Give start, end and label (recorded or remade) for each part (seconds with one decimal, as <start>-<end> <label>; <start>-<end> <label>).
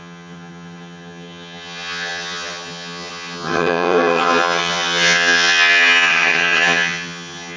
0.0-7.6 remade